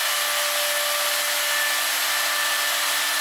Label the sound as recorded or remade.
recorded